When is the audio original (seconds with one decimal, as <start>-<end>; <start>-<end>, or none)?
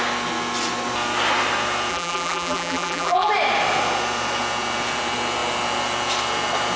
0.0-1.9; 3.3-6.8